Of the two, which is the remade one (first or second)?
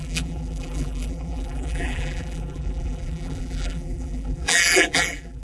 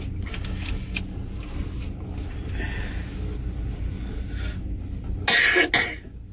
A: first